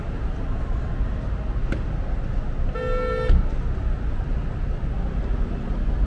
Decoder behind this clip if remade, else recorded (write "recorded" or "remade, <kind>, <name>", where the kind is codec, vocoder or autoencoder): recorded